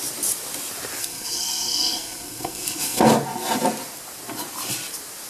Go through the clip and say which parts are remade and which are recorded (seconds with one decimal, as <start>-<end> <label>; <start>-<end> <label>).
0.0-1.0 recorded; 1.0-3.1 remade; 3.1-5.3 recorded